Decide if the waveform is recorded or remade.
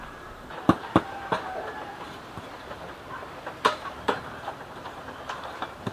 remade